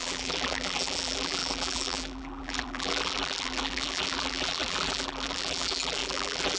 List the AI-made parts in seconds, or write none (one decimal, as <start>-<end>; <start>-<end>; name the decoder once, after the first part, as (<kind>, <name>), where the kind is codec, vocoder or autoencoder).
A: 0.0-6.6 (vocoder, BigVGAN v2)